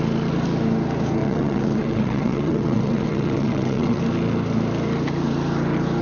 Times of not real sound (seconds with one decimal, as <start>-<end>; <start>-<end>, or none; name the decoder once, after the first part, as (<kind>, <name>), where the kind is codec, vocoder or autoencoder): 1.2-4.0 (vocoder, WaveNeXt)